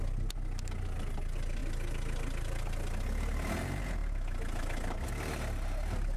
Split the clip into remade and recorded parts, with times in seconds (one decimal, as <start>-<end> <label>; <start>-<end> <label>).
0.0-6.2 recorded